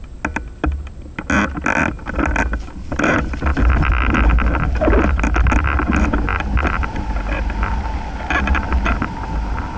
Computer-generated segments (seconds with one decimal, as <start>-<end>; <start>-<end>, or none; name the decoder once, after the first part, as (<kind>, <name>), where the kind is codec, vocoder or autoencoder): none